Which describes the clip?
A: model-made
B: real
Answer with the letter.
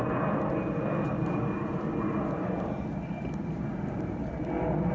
B